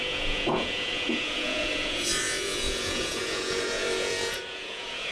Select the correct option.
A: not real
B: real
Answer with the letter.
A